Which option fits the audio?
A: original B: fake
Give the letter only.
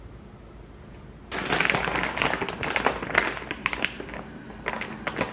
A